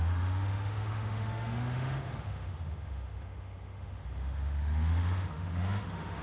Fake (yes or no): yes